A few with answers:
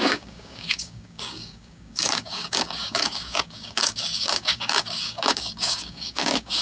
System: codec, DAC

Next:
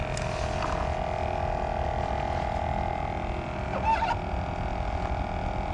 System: none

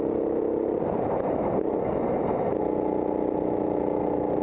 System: none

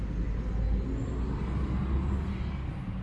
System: none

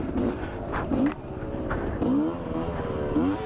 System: vocoder, BigVGAN v2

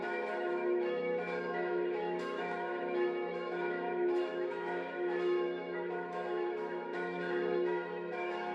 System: autoencoder, DAC-VAE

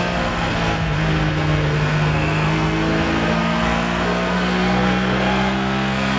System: codec, SNAC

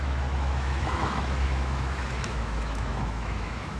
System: autoencoder, DAC-VAE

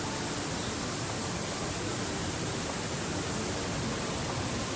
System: none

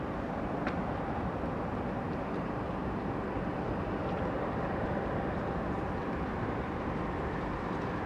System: vocoder, BigVGAN v2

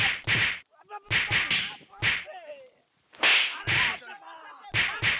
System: none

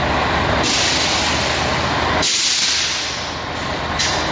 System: none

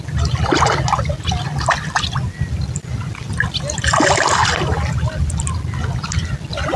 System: none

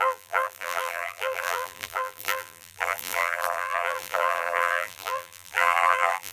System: vocoder, BigVGAN v2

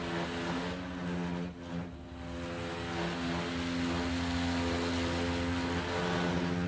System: none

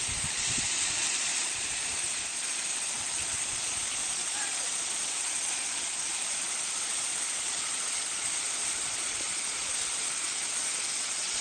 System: vocoder, Vocos